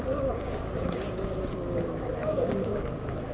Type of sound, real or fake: fake